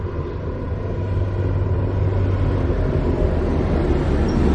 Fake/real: real